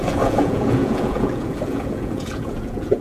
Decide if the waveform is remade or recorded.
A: remade